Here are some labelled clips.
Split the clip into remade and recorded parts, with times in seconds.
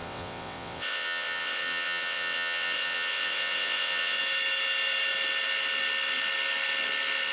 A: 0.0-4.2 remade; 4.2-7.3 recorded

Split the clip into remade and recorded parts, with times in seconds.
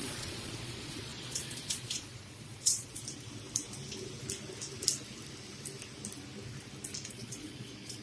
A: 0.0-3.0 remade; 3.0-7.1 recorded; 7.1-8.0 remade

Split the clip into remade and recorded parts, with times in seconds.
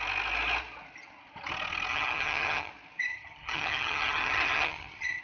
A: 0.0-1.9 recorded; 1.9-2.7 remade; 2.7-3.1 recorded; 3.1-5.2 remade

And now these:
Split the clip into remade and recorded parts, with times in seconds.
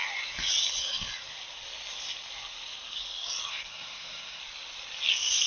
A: 0.0-3.5 recorded; 3.5-4.4 remade; 4.4-5.5 recorded